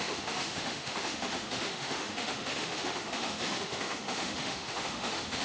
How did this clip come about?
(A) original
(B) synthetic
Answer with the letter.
B